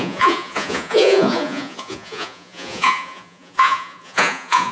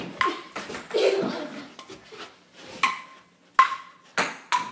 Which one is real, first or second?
second